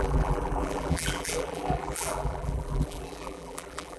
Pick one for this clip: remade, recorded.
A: remade